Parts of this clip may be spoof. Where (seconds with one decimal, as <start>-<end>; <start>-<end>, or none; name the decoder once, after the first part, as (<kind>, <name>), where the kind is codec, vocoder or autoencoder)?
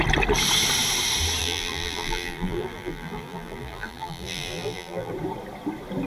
1.4-5.1 (vocoder, BigVGAN v2)